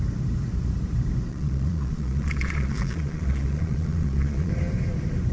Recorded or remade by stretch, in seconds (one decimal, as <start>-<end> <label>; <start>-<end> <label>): 0.0-1.3 recorded; 1.3-4.5 remade; 4.5-5.3 recorded

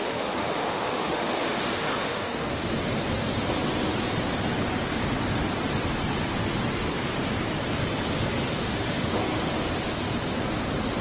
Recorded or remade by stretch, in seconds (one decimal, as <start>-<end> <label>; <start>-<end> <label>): 0.0-2.7 remade; 2.7-8.6 recorded; 8.6-9.5 remade; 9.5-11.0 recorded